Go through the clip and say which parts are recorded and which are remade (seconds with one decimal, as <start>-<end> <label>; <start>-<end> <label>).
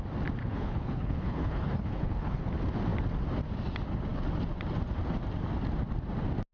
0.0-0.4 recorded; 0.4-2.4 remade; 2.4-6.5 recorded